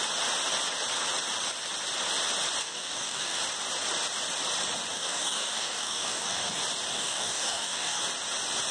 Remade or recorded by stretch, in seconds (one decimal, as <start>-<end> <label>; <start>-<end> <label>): 0.0-2.6 recorded; 2.6-3.4 remade; 3.4-4.9 recorded; 4.9-6.5 remade; 6.5-6.9 recorded; 6.9-8.0 remade; 8.0-8.7 recorded